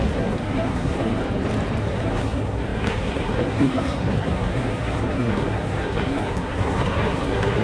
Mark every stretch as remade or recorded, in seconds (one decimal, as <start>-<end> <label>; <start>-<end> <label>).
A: 0.0-1.2 remade; 1.2-1.8 recorded; 1.8-7.6 remade